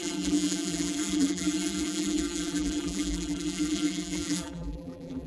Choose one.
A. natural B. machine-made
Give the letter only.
B